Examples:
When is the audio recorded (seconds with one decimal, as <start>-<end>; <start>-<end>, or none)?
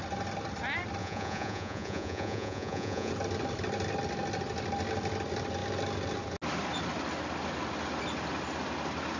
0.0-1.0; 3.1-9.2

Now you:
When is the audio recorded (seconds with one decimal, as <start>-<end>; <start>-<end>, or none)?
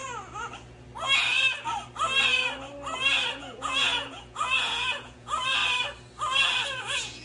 0.0-3.4; 5.6-6.8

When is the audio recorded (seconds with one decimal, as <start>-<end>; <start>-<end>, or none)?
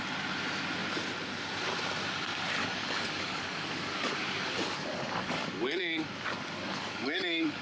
0.0-2.6